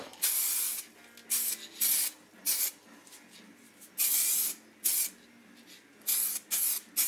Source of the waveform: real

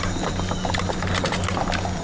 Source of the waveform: real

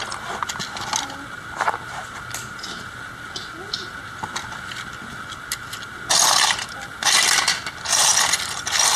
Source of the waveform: real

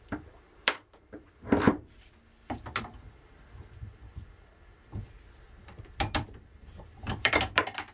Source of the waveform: fake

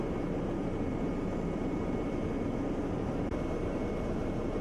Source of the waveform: fake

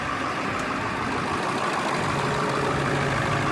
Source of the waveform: real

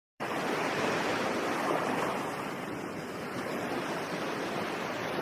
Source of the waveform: fake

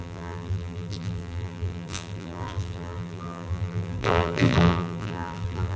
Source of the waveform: fake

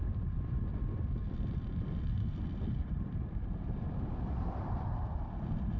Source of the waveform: fake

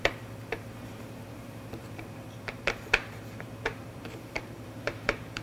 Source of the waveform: fake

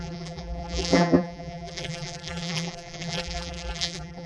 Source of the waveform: fake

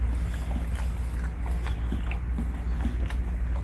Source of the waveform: real